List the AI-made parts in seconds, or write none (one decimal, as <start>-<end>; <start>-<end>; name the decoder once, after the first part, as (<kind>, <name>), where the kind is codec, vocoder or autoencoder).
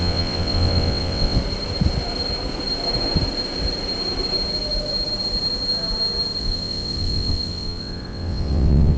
0.0-1.4 (vocoder, WaveNeXt); 6.4-9.0